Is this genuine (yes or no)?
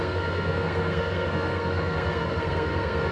no